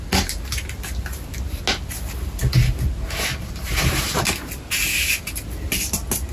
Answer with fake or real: real